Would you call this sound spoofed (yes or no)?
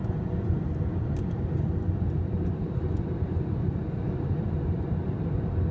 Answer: no